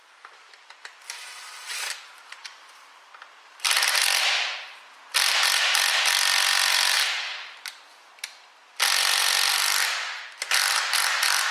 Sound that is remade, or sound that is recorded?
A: recorded